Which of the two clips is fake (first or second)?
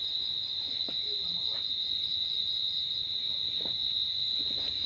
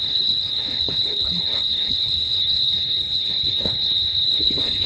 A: second